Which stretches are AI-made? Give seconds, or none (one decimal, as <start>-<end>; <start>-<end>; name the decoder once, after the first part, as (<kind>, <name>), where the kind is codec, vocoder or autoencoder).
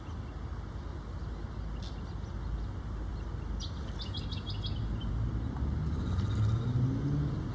none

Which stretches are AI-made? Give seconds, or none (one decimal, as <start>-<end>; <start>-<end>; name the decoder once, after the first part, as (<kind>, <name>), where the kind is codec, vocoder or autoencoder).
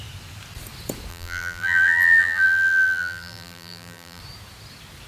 1.1-4.2 (vocoder, BigVGAN v2)